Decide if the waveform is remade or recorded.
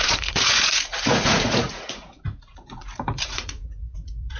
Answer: remade